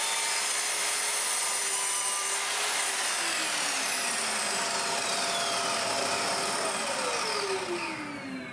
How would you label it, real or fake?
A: real